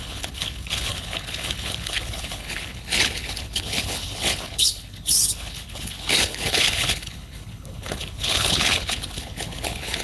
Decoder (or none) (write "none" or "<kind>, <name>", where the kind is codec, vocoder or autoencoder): codec, HILCodec